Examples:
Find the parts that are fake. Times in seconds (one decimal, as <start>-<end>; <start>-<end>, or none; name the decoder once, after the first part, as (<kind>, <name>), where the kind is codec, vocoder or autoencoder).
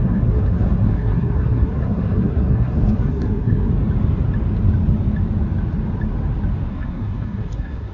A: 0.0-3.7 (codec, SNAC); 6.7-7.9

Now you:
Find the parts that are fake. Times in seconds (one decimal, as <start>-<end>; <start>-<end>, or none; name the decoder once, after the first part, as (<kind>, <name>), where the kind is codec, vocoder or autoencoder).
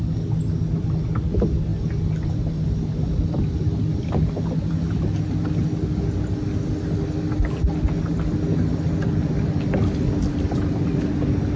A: none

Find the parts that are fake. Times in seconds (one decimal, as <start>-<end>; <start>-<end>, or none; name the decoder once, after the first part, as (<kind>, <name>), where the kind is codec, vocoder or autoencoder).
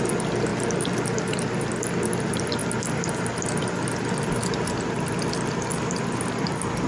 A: none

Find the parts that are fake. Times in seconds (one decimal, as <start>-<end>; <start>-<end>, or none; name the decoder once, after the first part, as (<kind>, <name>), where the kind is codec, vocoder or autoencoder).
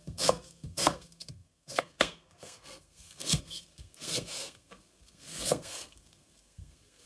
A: 0.0-7.1 (codec, SNAC)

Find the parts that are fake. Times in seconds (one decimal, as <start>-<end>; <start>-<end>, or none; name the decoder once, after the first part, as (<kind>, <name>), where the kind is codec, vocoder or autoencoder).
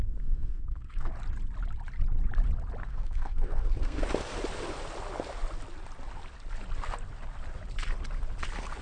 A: 0.5-1.1 (codec, SNAC); 2.8-4.0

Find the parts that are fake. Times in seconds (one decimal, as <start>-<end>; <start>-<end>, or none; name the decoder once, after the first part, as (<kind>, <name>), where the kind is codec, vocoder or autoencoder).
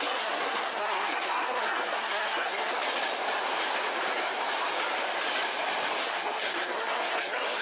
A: 0.0-2.8 (codec, SNAC); 6.0-7.6